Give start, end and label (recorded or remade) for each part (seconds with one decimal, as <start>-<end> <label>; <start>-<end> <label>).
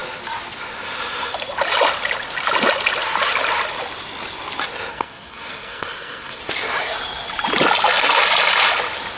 0.0-4.9 recorded; 4.9-6.4 remade; 6.4-9.2 recorded